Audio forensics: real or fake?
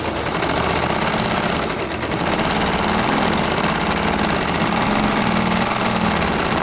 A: real